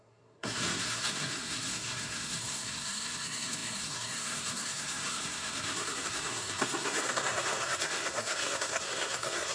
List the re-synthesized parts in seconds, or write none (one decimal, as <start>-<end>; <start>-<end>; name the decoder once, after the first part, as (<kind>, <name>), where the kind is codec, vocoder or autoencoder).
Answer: 0.0-9.5 (codec, SNAC)